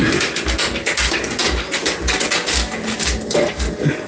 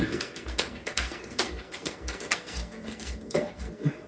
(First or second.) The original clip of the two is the first